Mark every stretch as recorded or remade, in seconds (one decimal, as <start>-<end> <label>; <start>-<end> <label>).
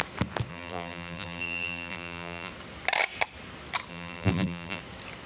0.0-0.5 recorded; 0.5-2.5 remade; 2.5-3.9 recorded; 3.9-4.8 remade; 4.8-5.3 recorded